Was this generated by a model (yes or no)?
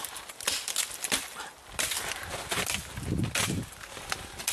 no